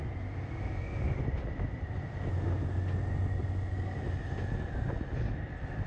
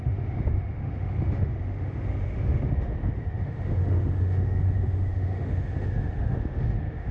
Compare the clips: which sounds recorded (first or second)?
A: first